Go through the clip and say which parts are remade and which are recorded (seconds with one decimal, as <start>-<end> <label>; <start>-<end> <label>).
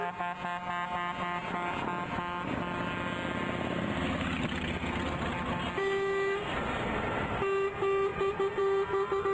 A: 0.0-9.3 recorded